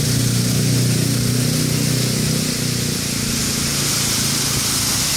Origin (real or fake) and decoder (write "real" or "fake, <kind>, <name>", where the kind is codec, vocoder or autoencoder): real